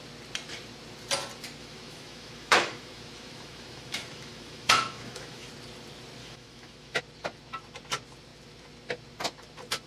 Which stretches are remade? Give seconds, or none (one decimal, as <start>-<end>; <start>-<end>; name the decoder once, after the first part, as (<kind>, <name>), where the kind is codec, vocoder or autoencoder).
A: 1.6-5.5 (autoencoder, DAC-VAE); 6.2-7.0